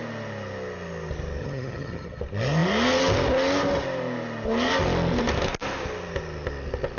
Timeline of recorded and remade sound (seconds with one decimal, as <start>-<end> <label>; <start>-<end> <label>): 0.0-1.4 recorded; 1.4-2.2 remade; 2.2-7.0 recorded